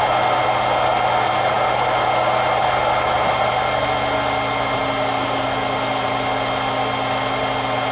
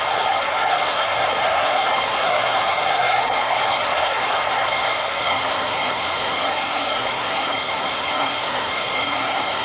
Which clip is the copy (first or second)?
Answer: second